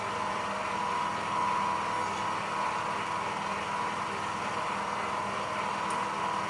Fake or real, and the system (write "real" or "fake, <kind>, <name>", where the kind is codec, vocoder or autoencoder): real